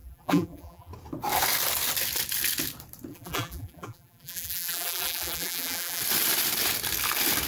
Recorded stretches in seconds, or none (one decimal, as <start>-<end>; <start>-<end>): 0.9-3.1; 6.0-7.5